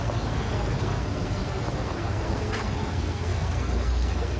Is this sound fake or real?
fake